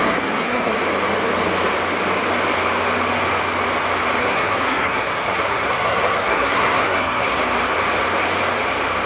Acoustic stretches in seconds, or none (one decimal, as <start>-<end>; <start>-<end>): 0.8-4.2; 7.4-9.1